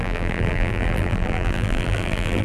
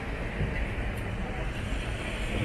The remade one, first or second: first